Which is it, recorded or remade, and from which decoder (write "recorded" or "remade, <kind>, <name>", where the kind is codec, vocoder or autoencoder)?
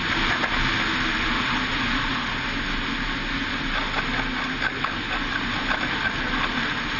recorded